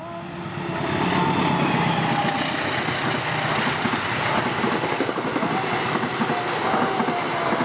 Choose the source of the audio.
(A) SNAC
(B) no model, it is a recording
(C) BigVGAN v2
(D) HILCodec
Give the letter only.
B